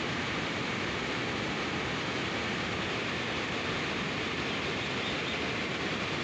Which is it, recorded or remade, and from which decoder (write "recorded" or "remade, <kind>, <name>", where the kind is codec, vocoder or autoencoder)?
recorded